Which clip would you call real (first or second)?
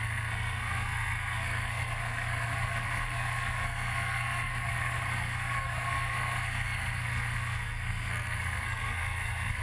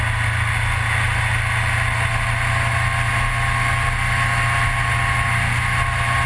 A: second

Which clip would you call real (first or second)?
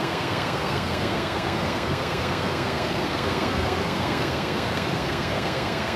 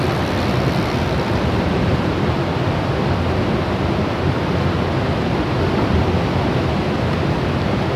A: second